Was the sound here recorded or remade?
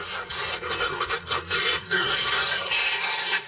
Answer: remade